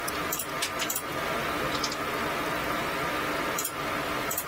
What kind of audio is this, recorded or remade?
recorded